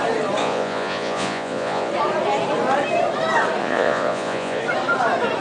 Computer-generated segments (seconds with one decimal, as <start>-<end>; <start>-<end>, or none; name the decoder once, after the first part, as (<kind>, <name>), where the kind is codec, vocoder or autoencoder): 0.4-1.9 (vocoder, Vocos); 3.6-4.6